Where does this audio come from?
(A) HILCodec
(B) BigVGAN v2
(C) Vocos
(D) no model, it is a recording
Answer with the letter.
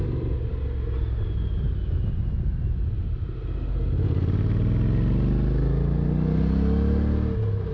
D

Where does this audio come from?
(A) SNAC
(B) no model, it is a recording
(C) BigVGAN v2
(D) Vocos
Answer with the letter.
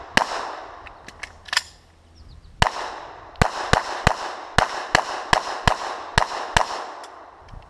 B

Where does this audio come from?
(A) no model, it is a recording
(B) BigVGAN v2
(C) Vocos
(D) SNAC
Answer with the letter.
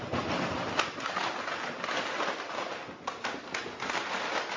A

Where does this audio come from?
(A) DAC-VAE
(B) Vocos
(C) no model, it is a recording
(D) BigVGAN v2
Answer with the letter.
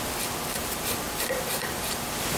D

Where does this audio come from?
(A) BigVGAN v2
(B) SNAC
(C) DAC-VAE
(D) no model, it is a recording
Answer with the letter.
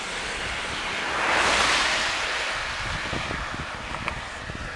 D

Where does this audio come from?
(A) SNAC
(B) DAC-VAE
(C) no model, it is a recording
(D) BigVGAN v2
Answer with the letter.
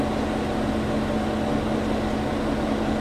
C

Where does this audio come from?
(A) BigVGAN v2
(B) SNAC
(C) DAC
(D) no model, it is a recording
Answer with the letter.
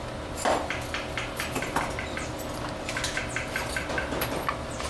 D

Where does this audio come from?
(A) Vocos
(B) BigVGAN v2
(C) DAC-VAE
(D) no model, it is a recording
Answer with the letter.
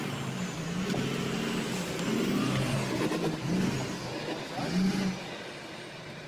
D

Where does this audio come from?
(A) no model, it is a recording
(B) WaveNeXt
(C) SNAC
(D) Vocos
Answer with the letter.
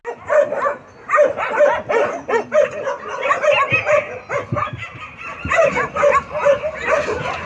A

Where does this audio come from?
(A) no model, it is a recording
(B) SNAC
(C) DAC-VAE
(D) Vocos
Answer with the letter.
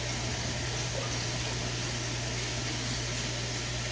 A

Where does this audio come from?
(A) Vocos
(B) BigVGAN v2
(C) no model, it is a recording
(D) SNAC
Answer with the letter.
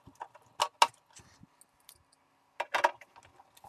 C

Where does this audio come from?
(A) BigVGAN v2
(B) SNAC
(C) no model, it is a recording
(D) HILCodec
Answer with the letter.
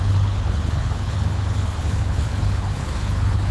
D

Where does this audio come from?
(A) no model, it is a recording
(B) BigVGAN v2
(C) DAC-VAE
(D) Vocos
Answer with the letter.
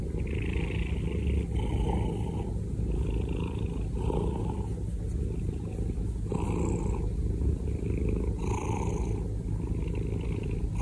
A